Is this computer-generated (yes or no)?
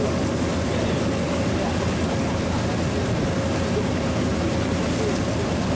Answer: no